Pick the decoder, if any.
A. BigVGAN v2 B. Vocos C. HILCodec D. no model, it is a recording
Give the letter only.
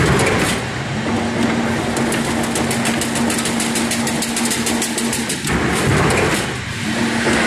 D